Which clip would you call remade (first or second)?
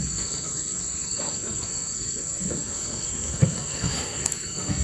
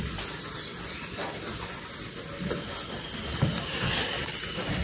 first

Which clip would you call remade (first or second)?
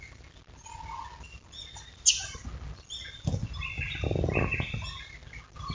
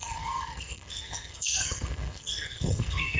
second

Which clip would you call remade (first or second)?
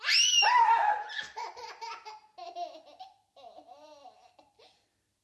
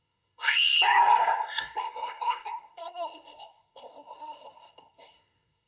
second